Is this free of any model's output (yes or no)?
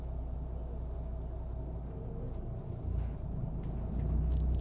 yes